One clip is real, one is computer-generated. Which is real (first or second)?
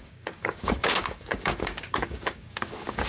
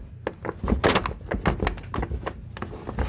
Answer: second